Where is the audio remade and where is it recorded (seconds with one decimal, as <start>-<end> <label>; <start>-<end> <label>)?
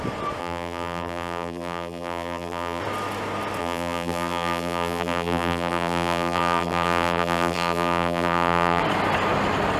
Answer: 0.0-0.4 recorded; 0.4-2.8 remade; 2.8-3.6 recorded; 3.6-8.8 remade; 8.8-9.8 recorded